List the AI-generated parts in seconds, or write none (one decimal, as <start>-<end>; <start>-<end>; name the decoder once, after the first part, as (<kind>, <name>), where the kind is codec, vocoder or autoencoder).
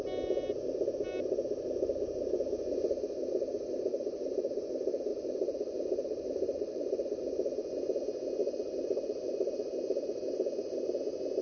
3.9-4.6 (vocoder, BigVGAN v2); 5.1-7.2; 8.4-10.9